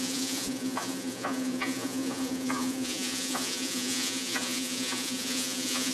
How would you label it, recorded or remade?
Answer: remade